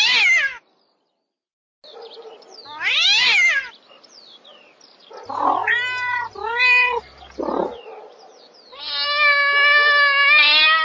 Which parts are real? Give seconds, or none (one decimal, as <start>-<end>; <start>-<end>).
0.0-10.8